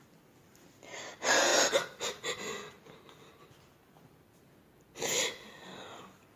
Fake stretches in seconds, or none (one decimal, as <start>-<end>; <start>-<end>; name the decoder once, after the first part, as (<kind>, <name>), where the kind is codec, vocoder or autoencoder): none